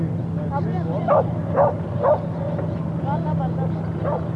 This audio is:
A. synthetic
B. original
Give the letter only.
B